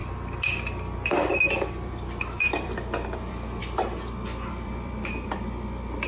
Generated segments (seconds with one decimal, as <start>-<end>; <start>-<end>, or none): 1.1-3.6; 4.5-6.1